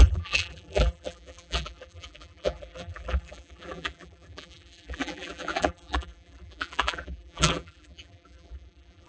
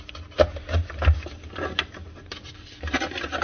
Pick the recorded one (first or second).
second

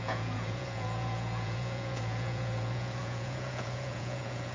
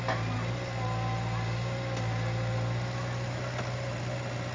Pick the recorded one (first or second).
second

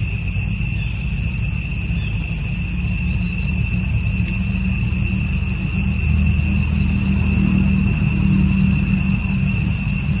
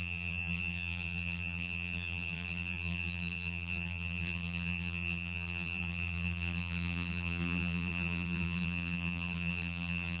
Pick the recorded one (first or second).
first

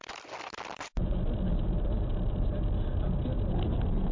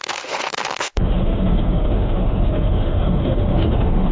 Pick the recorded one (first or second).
first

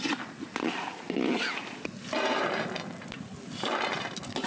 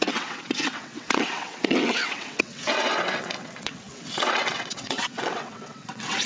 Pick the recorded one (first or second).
first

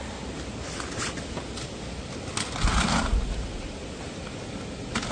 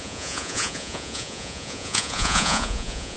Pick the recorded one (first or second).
first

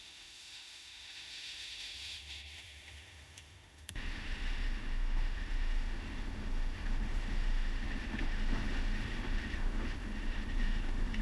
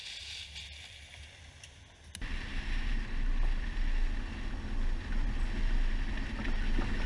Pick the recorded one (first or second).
second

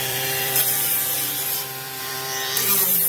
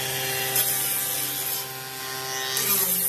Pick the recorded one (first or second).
second